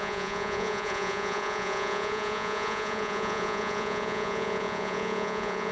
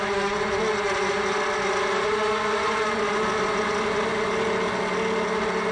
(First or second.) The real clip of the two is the second